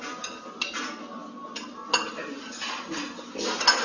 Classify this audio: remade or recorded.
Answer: recorded